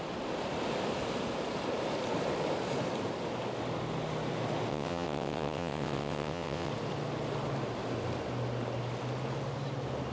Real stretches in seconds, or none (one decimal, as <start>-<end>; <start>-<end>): 0.0-4.7; 6.7-10.1